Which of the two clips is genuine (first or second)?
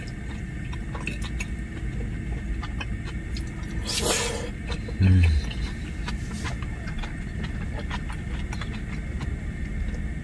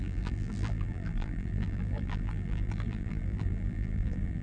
first